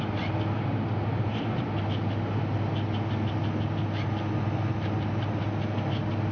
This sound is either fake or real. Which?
real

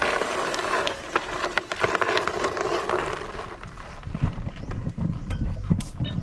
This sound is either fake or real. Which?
real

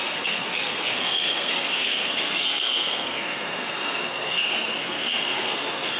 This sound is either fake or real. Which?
fake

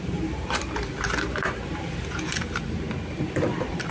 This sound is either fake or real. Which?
fake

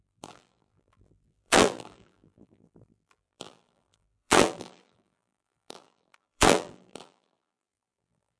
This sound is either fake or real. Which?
fake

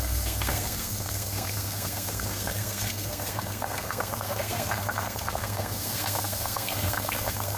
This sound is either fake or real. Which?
fake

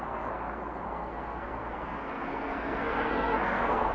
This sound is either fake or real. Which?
fake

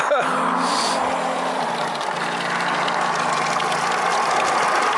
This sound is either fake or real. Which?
real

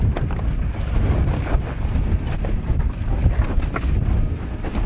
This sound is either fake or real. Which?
real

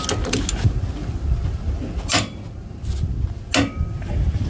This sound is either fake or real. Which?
real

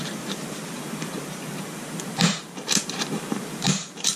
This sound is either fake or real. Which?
fake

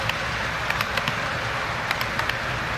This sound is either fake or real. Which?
real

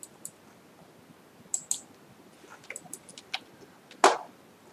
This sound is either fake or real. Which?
real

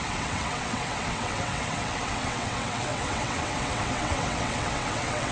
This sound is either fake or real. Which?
fake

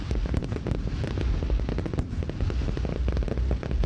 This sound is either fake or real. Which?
real